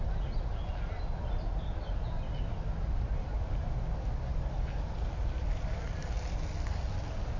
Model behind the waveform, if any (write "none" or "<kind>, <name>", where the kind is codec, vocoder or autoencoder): none